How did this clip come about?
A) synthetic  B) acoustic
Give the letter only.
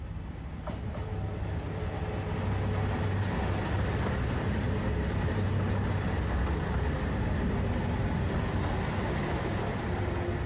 B